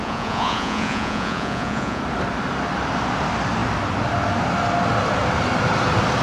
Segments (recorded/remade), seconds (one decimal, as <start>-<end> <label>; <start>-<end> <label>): 0.0-2.0 remade; 2.0-6.2 recorded